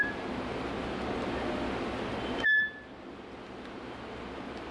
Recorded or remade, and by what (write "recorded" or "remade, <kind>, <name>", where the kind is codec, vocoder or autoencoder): recorded